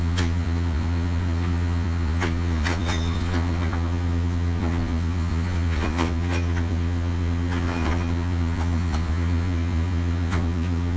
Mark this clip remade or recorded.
remade